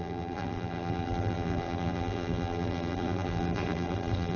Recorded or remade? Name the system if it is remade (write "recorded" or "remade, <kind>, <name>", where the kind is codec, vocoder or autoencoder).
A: remade, vocoder, BigVGAN v2